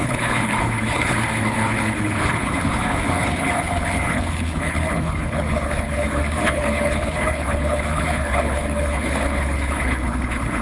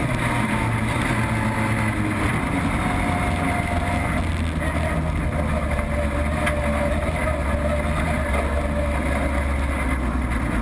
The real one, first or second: second